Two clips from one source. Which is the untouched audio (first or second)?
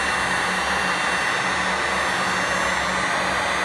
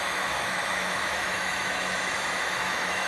first